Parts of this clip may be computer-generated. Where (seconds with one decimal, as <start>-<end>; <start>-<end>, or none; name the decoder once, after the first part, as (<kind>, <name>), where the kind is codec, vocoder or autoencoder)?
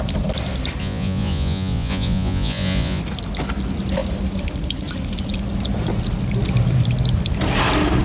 0.8-3.0 (vocoder, Vocos)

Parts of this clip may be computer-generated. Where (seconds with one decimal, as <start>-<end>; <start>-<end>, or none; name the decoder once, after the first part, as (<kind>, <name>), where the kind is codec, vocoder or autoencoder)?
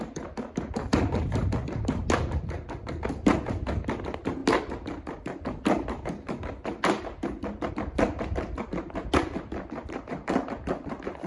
none